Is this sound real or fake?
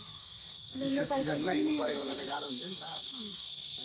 fake